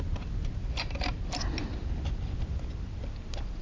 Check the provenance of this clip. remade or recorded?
recorded